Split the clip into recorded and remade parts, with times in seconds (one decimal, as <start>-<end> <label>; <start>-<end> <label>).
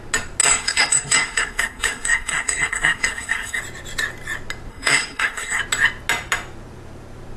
0.0-0.4 recorded; 0.4-3.6 remade; 3.6-4.7 recorded; 4.7-5.6 remade; 5.6-7.4 recorded